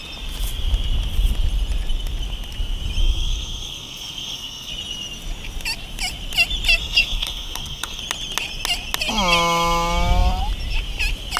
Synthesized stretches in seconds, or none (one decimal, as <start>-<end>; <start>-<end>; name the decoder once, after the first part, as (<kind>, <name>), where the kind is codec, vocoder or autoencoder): 3.0-4.7 (codec, SNAC); 6.8-8.0